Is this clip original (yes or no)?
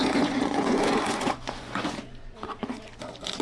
no